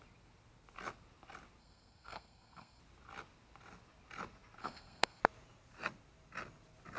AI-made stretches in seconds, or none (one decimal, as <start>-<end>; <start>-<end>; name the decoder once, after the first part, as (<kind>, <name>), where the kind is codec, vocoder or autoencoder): 1.6-2.8 (codec, SNAC); 4.6-5.2